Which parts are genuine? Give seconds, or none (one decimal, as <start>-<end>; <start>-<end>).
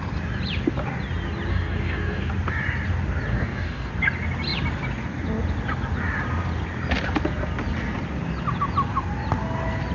0.0-1.5; 2.3-3.3; 3.9-9.9